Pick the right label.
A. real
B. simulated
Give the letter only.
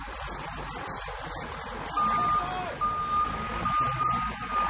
A